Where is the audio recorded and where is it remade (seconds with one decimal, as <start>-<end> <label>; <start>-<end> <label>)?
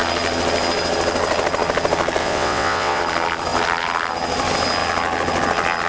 0.0-2.2 recorded; 2.2-3.0 remade; 3.0-5.9 recorded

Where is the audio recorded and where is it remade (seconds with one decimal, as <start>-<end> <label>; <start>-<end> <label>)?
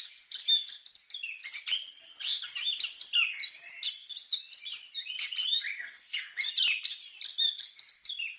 0.0-1.4 recorded; 1.4-2.0 remade; 2.0-8.4 recorded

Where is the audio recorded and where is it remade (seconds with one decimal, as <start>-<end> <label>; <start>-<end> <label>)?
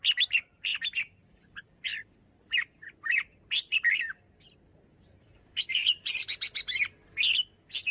0.0-0.7 recorded; 0.7-3.4 remade; 3.4-4.7 recorded; 4.7-6.1 remade; 6.1-7.9 recorded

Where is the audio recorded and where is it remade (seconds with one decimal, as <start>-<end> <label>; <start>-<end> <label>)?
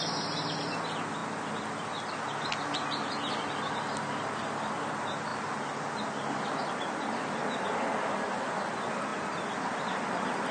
0.0-10.5 recorded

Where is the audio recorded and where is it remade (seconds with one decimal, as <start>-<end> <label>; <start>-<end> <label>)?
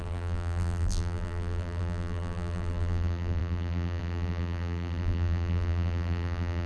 0.0-6.7 remade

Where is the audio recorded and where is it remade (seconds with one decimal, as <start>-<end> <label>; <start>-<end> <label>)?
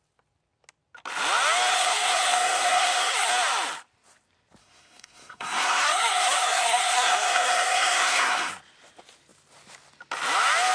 0.0-1.7 recorded; 1.7-3.3 remade; 3.3-4.6 recorded; 4.6-8.5 remade; 8.5-10.7 recorded